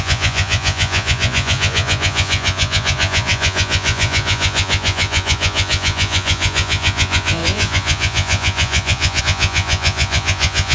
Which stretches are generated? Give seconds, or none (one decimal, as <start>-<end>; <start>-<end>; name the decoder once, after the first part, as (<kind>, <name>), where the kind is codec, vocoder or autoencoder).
0.0-10.7 (vocoder, Vocos)